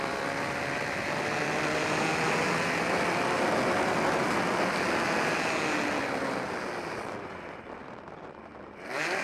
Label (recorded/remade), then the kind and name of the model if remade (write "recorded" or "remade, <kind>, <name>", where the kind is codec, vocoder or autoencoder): remade, vocoder, BigVGAN v2